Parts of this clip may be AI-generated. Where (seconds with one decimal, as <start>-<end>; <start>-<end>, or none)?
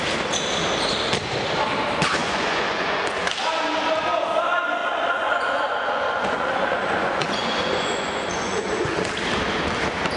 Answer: 2.2-3.3; 4.8-9.1